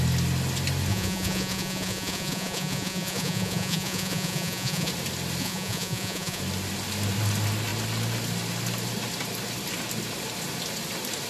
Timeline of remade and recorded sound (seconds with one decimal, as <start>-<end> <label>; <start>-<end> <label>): 0.0-0.9 recorded; 0.9-4.9 remade; 4.9-5.4 recorded; 5.4-6.4 remade; 6.4-11.3 recorded